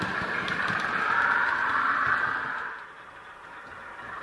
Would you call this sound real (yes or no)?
no